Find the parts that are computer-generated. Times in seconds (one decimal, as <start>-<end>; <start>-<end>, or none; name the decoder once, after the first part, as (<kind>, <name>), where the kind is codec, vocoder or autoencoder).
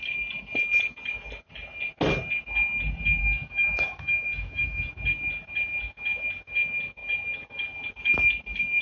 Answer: 3.2-4.9 (autoencoder, DAC-VAE)